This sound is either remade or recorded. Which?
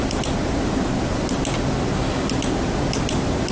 recorded